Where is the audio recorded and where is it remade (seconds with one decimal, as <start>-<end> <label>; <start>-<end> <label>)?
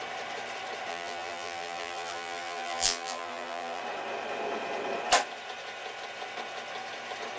0.0-0.9 recorded; 0.9-3.8 remade; 3.8-7.4 recorded